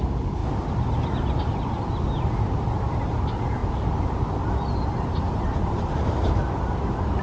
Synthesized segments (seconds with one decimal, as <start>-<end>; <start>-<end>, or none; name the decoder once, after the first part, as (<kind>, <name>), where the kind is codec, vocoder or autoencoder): none